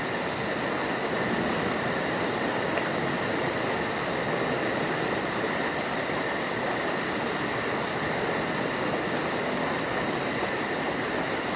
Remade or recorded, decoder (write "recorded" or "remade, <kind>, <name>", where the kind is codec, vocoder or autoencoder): recorded